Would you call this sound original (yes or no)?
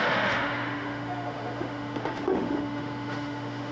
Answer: no